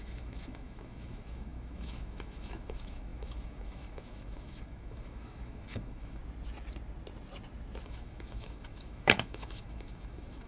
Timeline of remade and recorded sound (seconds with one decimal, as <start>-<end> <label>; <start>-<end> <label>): 0.0-6.2 remade; 6.2-7.8 recorded; 7.8-10.5 remade